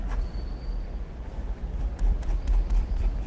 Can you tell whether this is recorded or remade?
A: remade